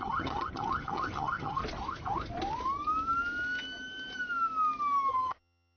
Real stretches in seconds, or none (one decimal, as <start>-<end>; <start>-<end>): 1.6-5.1